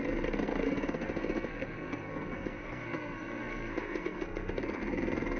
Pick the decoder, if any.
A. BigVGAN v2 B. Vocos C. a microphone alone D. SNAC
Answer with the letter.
D